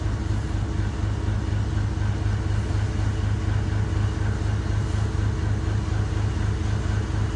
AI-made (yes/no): no